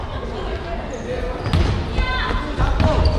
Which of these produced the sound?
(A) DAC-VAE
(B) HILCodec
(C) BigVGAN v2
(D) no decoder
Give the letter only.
D